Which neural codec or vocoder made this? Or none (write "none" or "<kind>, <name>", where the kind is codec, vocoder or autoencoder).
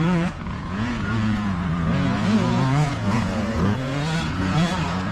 vocoder, Vocos